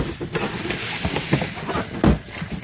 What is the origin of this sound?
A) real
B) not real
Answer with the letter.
A